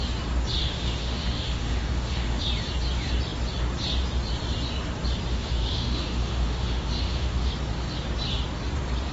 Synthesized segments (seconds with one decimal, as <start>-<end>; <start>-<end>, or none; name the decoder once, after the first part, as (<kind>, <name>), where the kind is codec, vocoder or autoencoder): 0.6-2.4 (autoencoder, DAC-VAE); 5.3-7.5